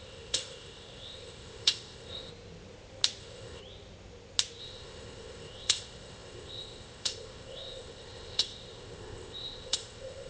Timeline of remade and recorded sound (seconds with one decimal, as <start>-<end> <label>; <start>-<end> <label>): 0.0-2.3 remade; 2.3-3.2 recorded; 3.2-3.6 remade; 3.6-4.6 recorded; 4.6-10.3 remade